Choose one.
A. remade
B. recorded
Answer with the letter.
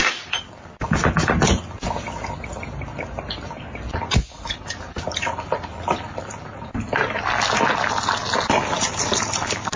B